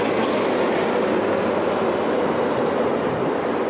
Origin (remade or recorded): recorded